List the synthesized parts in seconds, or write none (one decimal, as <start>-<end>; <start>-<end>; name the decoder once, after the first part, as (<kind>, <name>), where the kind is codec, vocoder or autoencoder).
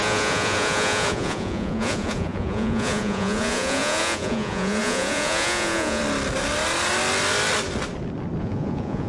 0.0-6.0 (vocoder, Vocos); 8.4-9.1